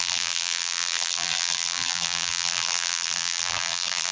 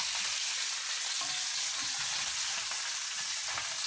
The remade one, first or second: first